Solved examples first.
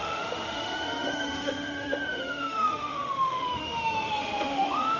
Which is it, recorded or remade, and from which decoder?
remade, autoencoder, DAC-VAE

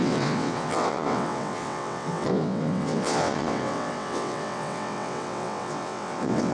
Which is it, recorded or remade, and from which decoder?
remade, vocoder, WaveNeXt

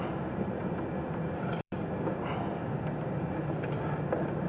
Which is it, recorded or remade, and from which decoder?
remade, vocoder, BigVGAN v2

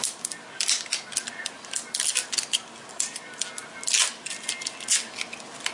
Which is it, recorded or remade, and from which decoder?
recorded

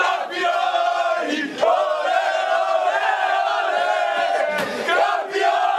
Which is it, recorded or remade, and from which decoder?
recorded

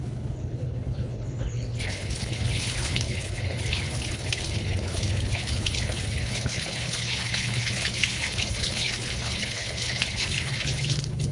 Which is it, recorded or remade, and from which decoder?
remade, codec, HILCodec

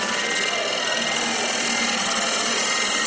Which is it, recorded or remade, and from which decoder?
recorded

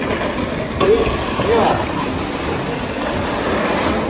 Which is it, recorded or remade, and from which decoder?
recorded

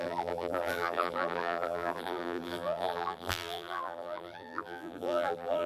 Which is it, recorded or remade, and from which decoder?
remade, vocoder, BigVGAN v2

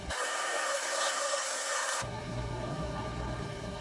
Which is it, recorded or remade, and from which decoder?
remade, codec, SNAC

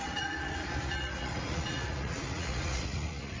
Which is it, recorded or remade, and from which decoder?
remade, vocoder, Vocos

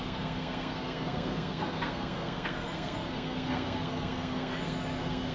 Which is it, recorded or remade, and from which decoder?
remade, codec, SNAC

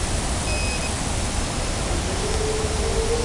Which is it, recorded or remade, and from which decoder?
recorded